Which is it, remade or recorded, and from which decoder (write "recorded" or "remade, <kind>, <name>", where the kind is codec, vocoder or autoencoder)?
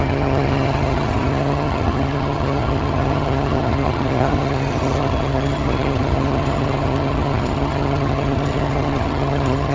remade, vocoder, HiFi-GAN